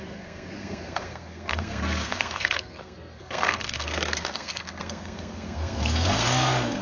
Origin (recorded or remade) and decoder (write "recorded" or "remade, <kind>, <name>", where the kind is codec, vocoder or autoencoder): remade, codec, SNAC